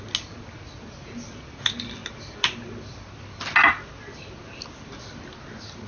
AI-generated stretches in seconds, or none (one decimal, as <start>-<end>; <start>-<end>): none